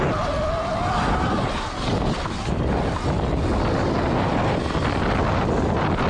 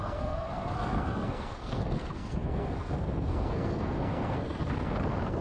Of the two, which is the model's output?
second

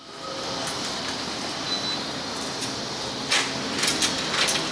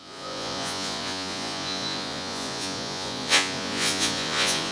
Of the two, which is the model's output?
second